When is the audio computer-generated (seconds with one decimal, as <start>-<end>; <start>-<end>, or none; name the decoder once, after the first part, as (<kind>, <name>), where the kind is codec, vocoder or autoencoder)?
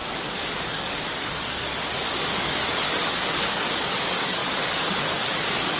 0.0-5.8 (codec, DAC)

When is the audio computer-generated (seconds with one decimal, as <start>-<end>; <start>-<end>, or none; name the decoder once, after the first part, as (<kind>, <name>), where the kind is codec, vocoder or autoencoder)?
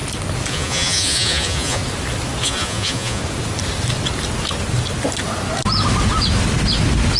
0.5-1.8 (vocoder, Vocos); 2.4-3.2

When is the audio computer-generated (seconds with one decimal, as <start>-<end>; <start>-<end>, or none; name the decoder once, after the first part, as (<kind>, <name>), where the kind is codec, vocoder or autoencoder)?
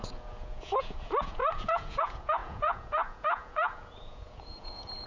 0.0-5.1 (vocoder, Vocos)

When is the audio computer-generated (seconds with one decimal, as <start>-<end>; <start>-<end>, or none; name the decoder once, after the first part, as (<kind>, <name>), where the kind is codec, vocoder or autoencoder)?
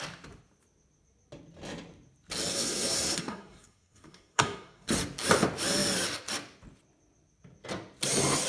2.5-4.9 (codec, SNAC)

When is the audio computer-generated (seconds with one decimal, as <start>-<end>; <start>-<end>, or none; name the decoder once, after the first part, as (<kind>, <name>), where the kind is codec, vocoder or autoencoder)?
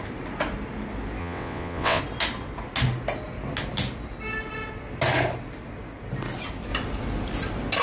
1.2-2.0 (vocoder, WaveNeXt)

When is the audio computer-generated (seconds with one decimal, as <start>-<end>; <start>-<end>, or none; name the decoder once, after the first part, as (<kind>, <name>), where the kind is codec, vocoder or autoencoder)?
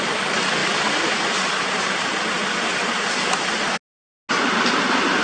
none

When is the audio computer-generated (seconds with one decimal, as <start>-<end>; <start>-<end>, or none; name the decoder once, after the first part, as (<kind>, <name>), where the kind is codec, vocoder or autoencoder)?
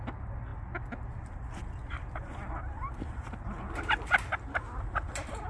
none